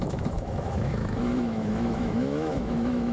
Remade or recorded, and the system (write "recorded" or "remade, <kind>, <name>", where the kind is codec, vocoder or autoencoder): remade, autoencoder, DAC-VAE